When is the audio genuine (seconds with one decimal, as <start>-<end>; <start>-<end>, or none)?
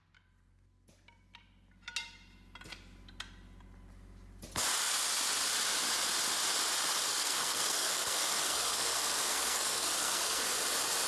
0.0-7.1; 10.6-11.1